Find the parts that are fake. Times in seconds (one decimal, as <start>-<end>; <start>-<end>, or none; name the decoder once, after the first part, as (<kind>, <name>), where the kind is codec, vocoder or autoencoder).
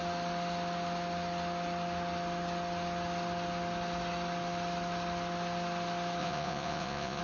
6.2-7.2 (vocoder, Vocos)